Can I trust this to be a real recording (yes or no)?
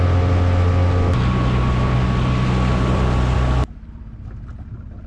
yes